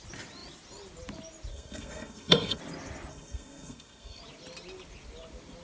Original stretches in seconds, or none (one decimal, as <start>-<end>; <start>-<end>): 0.0-1.5; 2.6-3.1; 4.2-5.6

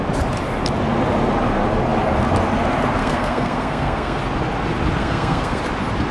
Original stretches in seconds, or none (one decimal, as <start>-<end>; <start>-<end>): 0.0-3.0; 4.2-5.0; 5.6-6.1

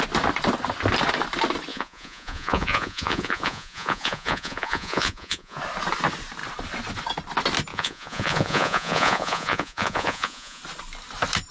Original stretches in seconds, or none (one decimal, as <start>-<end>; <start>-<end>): 0.0-1.7; 5.6-7.7; 10.6-11.5

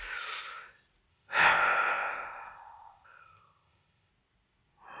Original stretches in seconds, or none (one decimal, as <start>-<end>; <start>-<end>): 0.0-1.1; 4.1-5.0

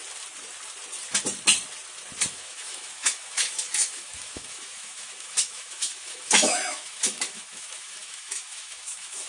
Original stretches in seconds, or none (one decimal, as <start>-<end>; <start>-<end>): 0.0-2.3